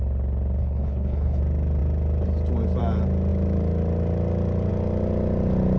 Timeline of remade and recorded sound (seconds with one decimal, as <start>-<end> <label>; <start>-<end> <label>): 0.0-0.6 recorded; 0.6-1.4 remade; 1.4-5.8 recorded